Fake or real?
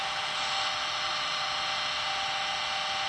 real